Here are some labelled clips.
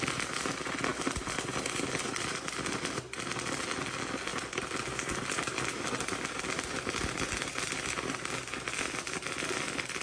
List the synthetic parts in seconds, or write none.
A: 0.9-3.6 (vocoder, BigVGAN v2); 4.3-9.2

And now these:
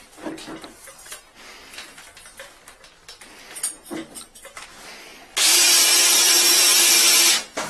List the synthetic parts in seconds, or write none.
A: none

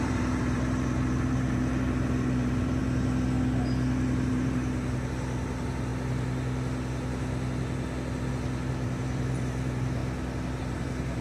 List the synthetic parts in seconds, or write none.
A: 0.0-2.8 (vocoder, BigVGAN v2); 4.3-5.9; 8.3-10.0; 10.6-11.2

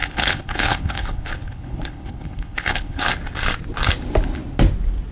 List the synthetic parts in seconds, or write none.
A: 0.0-3.1 (codec, HILCodec)

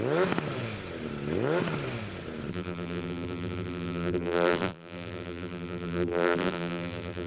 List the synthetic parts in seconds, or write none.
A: 2.5-7.3 (vocoder, BigVGAN v2)

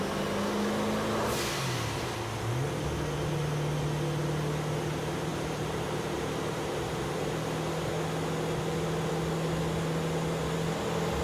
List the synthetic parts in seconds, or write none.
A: 5.3-7.3 (vocoder, BigVGAN v2)

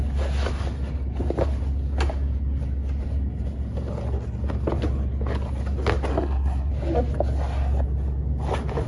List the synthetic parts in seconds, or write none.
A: 6.1-6.7 (codec, SNAC)

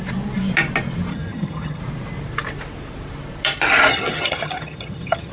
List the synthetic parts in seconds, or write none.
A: 1.1-1.8 (vocoder, HiFi-GAN); 3.9-5.3